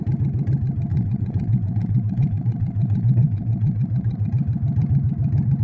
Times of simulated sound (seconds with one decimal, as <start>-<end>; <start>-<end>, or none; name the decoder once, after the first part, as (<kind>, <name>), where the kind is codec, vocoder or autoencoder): 0.9-4.3 (vocoder, Vocos)